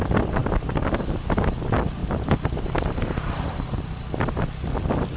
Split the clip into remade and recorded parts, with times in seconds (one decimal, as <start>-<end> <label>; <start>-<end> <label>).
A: 0.0-2.0 recorded; 2.0-4.0 remade; 4.0-5.2 recorded